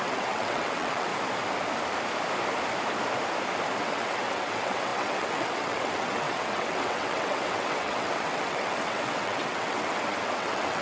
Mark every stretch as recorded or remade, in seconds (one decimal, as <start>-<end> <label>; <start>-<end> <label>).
0.0-1.1 remade; 1.1-3.8 recorded; 3.8-10.8 remade